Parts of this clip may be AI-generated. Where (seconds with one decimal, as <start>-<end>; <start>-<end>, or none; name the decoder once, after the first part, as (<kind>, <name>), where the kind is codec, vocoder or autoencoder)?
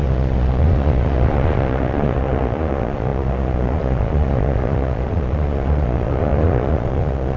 0.0-7.4 (vocoder, Vocos)